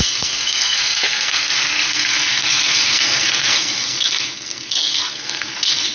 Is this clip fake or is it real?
fake